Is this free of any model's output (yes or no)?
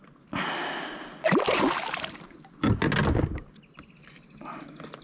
yes